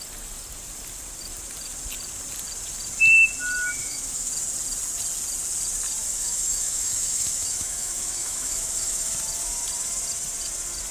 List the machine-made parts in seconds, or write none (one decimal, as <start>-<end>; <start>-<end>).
3.8-4.3; 6.0-9.1